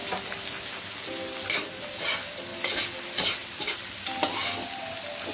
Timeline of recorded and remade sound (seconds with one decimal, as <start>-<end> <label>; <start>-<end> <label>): 0.0-5.3 recorded